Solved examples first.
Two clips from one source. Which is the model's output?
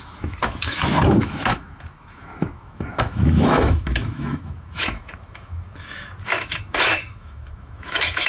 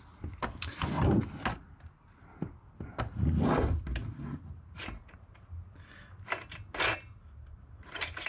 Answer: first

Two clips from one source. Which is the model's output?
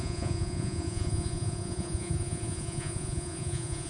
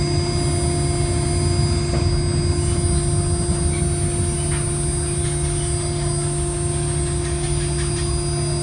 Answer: first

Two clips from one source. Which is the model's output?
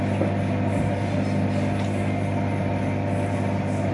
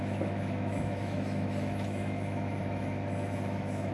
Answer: second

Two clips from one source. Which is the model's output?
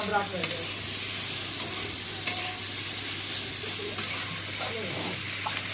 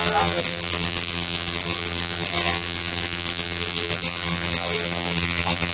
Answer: second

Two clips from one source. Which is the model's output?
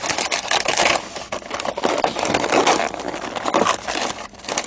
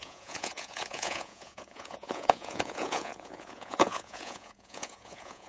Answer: second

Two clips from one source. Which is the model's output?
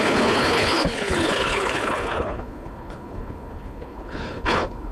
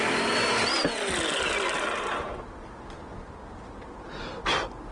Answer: first